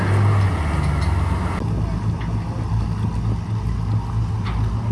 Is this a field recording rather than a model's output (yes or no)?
yes